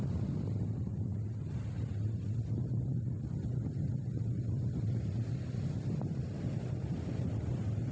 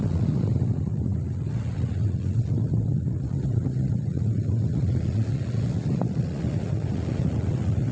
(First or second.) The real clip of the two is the first